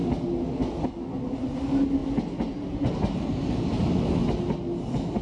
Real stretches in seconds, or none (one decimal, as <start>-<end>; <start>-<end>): 0.0-5.2